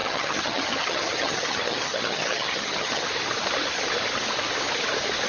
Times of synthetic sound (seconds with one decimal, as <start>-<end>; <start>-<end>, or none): 0.0-3.1